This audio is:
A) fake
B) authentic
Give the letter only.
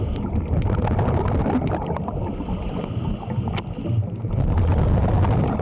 B